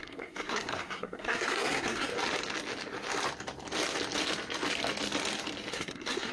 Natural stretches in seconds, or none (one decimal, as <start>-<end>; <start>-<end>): 2.1-5.7